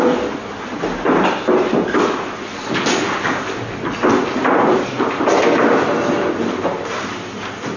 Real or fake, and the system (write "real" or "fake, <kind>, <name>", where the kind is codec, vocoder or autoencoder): real